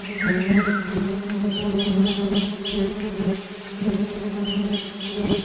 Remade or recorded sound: recorded